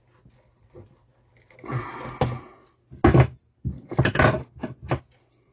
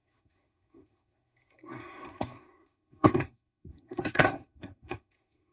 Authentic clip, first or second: first